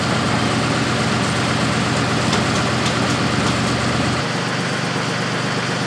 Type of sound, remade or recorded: recorded